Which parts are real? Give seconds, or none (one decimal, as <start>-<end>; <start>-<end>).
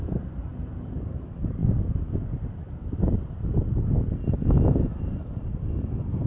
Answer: 1.6-5.0